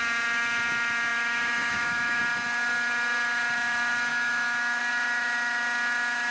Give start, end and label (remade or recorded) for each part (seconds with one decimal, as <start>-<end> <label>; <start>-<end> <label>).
0.0-1.1 recorded; 1.1-2.2 remade; 2.2-4.1 recorded; 4.1-4.8 remade; 4.8-6.3 recorded